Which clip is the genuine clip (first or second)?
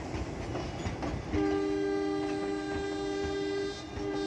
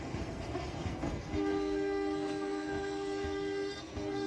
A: first